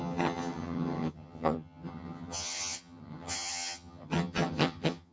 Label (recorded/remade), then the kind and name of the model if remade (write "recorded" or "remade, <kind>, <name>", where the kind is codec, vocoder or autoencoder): remade, vocoder, HiFi-GAN